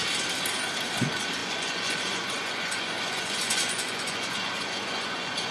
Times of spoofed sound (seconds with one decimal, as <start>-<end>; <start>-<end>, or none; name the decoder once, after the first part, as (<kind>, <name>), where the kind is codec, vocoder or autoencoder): 0.9-5.5 (vocoder, Vocos)